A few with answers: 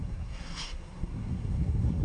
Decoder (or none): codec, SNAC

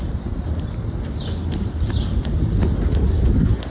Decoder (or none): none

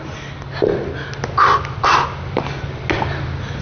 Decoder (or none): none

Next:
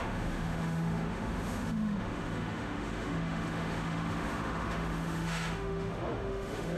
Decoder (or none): autoencoder, DAC-VAE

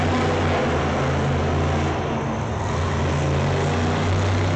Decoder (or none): none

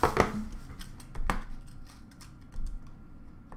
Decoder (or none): none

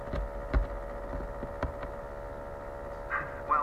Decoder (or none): none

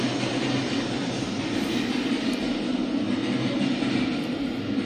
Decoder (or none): none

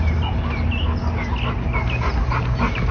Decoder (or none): none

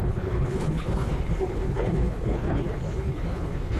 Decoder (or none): codec, HILCodec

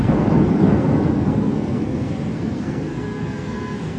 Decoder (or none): codec, SNAC